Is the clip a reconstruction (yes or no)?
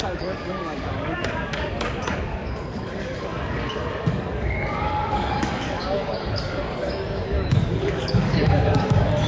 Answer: yes